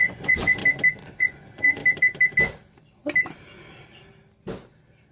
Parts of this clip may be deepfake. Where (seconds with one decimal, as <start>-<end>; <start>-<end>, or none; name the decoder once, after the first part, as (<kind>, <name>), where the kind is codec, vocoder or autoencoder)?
0.0-0.6 (vocoder, Vocos); 1.2-1.8